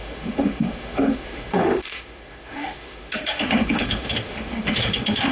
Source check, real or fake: fake